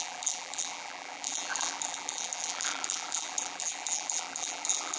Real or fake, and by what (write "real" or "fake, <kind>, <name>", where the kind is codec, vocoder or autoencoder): fake, vocoder, BigVGAN v2